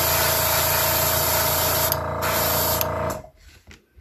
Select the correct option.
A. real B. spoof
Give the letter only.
A